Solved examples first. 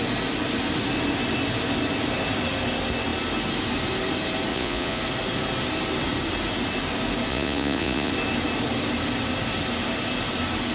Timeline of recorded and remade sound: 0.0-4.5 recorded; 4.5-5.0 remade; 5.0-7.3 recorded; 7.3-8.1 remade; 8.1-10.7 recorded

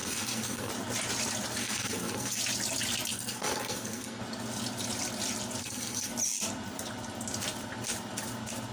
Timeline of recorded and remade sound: 0.0-0.7 remade; 0.7-1.6 recorded; 1.6-2.4 remade; 2.4-3.1 recorded; 3.1-4.2 remade; 4.2-5.6 recorded; 5.6-6.1 remade; 6.1-8.7 recorded

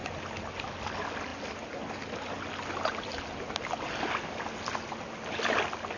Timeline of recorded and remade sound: 0.0-6.0 recorded

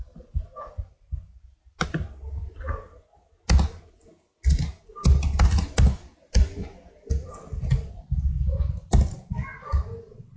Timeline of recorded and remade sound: 0.0-10.4 recorded

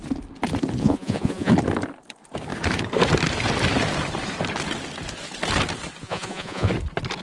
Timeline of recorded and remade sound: 0.0-0.8 recorded; 0.8-1.5 remade; 1.5-6.0 recorded; 6.0-6.7 remade; 6.7-7.2 recorded

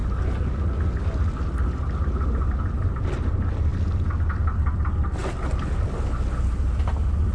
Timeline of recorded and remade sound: 0.0-7.3 recorded